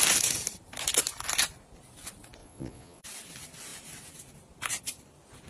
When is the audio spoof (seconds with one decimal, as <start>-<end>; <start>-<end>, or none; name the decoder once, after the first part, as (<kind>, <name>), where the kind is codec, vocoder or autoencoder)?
2.4-3.0 (vocoder, Vocos)